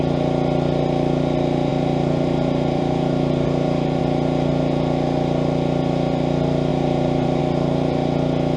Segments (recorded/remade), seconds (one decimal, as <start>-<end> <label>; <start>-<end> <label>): 0.0-1.7 recorded; 1.7-4.0 remade; 4.0-6.7 recorded; 6.7-7.4 remade; 7.4-8.6 recorded